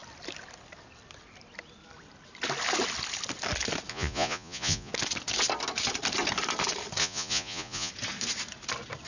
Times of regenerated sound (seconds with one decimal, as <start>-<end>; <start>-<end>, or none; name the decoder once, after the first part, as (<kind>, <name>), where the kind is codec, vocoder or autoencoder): 3.9-4.9 (vocoder, Vocos); 7.0-7.9